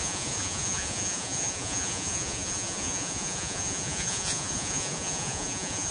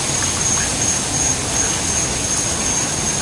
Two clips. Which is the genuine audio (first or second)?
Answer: second